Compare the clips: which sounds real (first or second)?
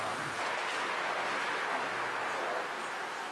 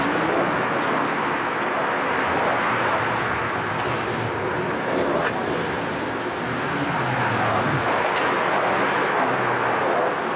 second